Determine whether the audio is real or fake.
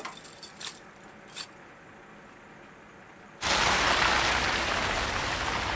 real